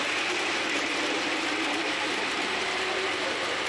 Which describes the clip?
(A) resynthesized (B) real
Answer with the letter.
B